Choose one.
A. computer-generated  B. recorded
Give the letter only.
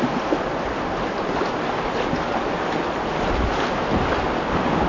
B